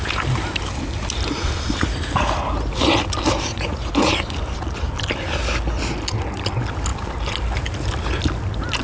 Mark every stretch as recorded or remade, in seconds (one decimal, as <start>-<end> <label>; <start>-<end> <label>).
0.0-3.5 recorded; 3.5-4.1 remade; 4.1-8.8 recorded